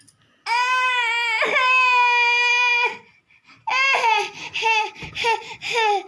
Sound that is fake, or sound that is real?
real